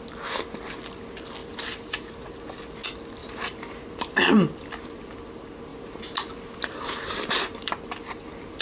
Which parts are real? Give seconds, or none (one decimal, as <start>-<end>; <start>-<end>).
0.0-1.4; 2.4-3.2; 5.0-5.7; 7.7-8.6